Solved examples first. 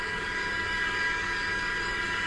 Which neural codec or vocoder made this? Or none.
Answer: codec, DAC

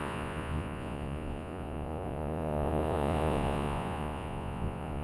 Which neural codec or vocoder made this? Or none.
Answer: vocoder, Vocos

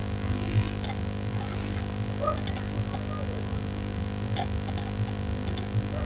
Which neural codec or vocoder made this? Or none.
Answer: none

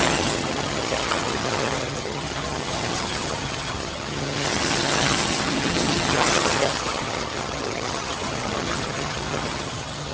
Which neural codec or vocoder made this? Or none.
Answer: vocoder, HiFi-GAN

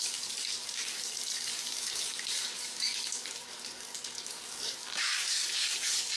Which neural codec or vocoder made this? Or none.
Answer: codec, DAC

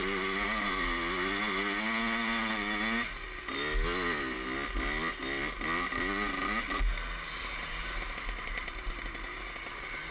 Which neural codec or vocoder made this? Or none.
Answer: none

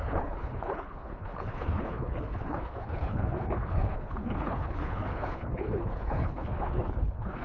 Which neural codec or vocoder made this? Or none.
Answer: codec, HILCodec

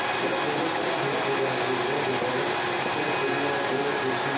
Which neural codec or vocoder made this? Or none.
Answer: none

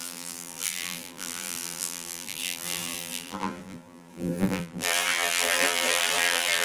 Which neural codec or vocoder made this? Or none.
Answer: vocoder, BigVGAN v2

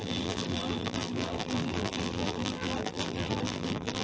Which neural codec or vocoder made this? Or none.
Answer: vocoder, BigVGAN v2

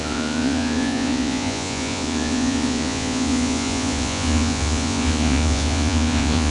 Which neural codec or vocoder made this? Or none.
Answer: vocoder, Vocos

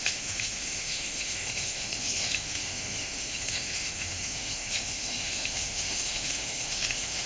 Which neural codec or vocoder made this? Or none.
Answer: autoencoder, DAC-VAE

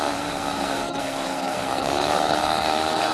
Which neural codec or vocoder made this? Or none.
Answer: codec, SNAC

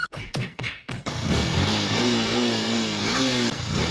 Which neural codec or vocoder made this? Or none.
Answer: codec, SNAC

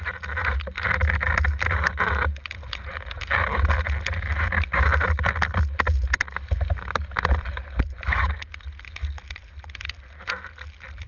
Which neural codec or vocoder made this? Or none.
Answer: none